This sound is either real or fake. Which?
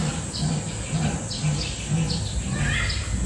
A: real